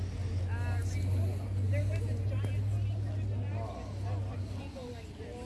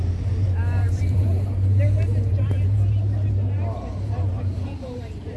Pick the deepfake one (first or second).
second